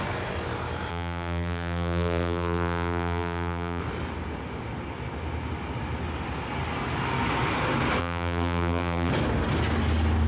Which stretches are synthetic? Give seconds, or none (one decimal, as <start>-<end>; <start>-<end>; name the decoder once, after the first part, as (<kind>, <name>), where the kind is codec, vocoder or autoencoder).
0.9-3.8 (vocoder, BigVGAN v2); 8.0-9.1